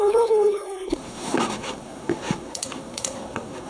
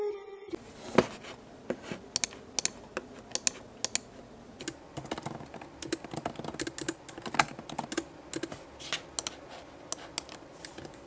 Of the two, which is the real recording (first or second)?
second